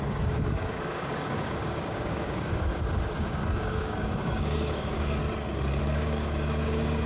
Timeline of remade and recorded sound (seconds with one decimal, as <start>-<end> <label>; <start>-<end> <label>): 0.0-5.2 remade; 5.2-5.8 recorded; 5.8-7.1 remade